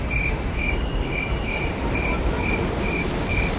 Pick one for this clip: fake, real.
real